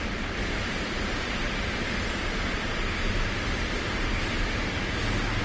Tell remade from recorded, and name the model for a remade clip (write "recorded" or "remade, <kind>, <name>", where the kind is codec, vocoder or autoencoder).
recorded